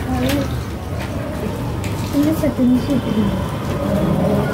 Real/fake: real